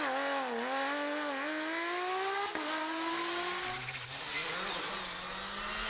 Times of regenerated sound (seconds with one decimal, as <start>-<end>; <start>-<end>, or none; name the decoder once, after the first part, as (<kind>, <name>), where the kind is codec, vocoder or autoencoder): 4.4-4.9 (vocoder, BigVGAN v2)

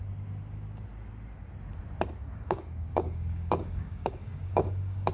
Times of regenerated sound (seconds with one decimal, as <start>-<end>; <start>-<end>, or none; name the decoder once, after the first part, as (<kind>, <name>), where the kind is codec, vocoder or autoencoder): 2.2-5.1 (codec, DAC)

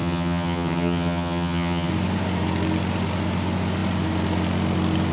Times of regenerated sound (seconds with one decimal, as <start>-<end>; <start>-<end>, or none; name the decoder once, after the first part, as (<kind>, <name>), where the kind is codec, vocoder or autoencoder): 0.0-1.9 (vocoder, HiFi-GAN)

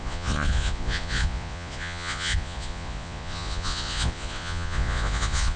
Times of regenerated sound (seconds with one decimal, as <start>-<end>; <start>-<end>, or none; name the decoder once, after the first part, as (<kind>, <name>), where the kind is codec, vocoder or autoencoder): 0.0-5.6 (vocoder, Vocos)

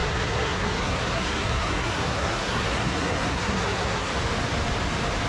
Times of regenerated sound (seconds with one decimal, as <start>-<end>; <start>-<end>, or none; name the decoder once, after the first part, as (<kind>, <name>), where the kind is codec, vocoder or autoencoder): 0.0-4.1 (codec, SNAC)